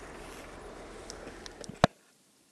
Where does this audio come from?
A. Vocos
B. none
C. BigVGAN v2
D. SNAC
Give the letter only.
B